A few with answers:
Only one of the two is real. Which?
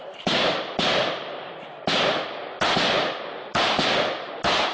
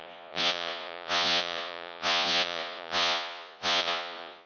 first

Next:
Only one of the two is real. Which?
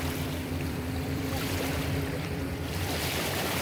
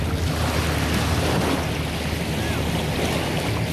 second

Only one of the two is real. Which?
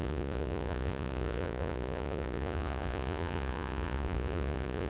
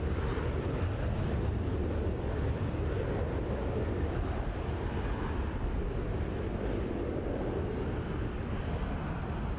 second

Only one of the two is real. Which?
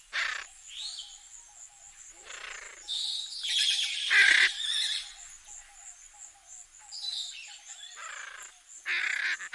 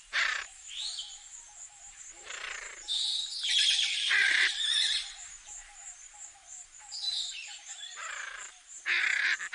first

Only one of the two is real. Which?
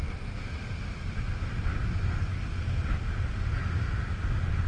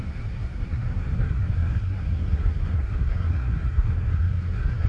first